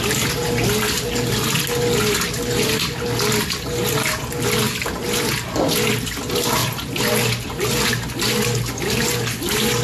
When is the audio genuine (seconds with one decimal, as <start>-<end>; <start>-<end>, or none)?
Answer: 0.0-9.8